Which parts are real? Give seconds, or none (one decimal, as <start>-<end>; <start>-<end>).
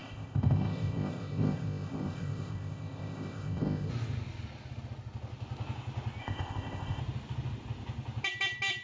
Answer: 3.9-6.2; 7.0-8.8